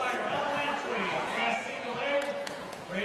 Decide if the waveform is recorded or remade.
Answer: remade